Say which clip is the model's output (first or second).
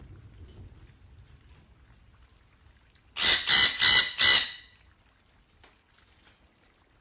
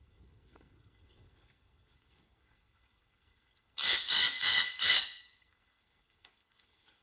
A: second